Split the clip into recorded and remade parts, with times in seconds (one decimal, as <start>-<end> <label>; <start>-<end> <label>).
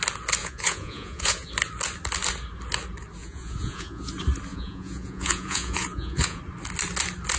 0.0-0.4 recorded; 0.4-1.5 remade; 1.5-3.2 recorded; 3.2-4.1 remade; 4.1-4.5 recorded; 4.5-6.4 remade; 6.4-7.4 recorded